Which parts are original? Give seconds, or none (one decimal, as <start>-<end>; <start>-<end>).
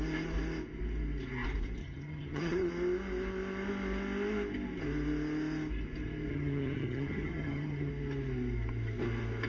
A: 0.0-1.8; 2.7-6.3; 7.9-9.5